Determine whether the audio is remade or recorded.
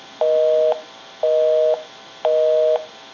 recorded